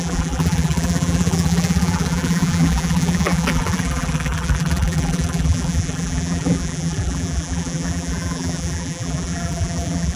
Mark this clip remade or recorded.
remade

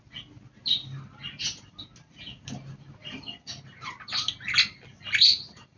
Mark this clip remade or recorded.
recorded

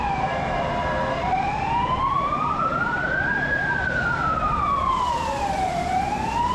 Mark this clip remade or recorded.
remade